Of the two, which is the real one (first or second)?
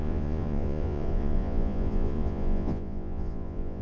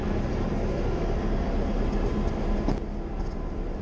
second